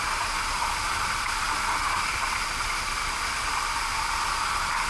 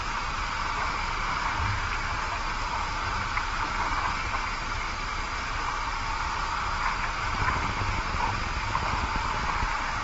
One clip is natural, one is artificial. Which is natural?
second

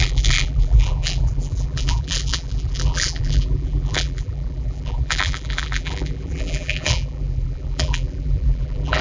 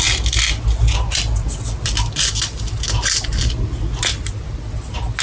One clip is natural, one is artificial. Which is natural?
second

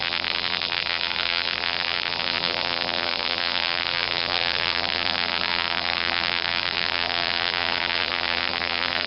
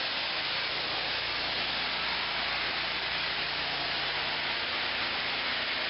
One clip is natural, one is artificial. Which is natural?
second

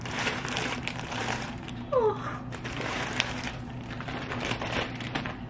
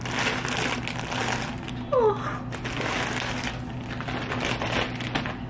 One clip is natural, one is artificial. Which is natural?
second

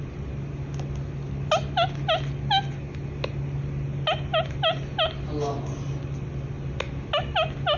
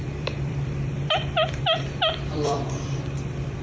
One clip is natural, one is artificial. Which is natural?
first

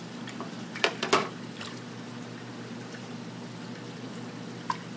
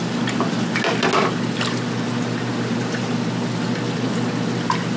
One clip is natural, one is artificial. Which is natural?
second